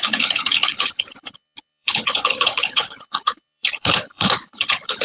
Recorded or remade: remade